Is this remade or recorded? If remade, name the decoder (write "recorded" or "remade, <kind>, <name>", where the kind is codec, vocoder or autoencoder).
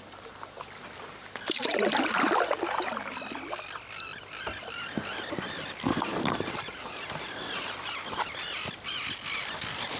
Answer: recorded